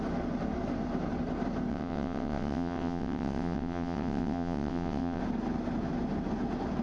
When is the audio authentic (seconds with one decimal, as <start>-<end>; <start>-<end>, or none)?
0.0-1.7; 5.2-6.8